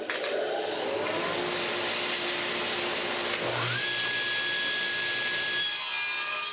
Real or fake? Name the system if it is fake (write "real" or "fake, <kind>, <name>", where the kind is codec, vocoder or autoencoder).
real